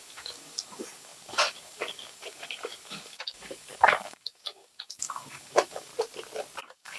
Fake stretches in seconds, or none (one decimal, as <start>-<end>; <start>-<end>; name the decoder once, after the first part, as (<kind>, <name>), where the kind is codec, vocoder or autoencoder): 0.0-5.9 (codec, DAC); 6.6-7.0